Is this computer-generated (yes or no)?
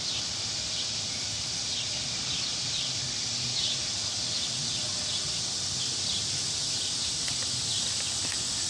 no